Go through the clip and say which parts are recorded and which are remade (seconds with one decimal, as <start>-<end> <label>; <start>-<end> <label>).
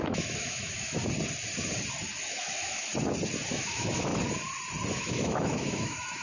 0.0-1.0 remade; 1.0-2.2 recorded; 2.2-2.9 remade; 2.9-3.5 recorded; 3.5-4.1 remade; 4.1-4.9 recorded; 4.9-6.2 remade